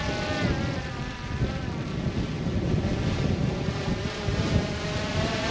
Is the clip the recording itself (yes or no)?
yes